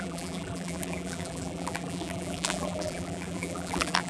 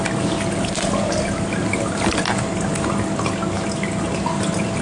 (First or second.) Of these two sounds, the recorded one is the second